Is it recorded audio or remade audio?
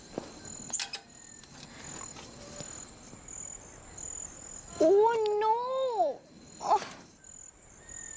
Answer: recorded